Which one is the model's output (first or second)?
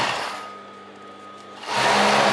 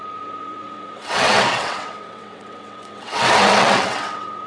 second